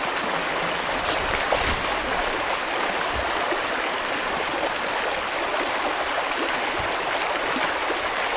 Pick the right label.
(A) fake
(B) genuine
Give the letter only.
B